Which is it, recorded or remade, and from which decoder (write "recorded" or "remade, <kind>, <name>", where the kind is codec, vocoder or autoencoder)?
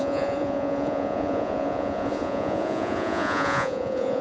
remade, vocoder, Vocos